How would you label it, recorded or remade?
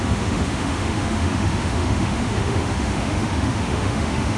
remade